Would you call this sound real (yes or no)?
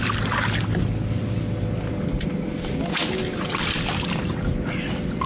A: yes